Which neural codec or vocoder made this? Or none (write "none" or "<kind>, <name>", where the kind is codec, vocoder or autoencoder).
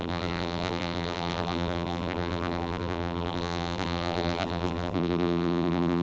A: vocoder, BigVGAN v2